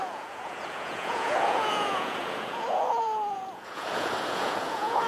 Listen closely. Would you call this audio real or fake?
fake